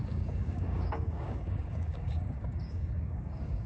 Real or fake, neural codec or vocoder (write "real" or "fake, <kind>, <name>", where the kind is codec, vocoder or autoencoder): fake, codec, DAC